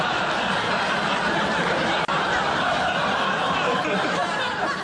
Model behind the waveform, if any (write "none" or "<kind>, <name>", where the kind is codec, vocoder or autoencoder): none